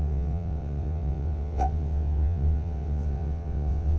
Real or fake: fake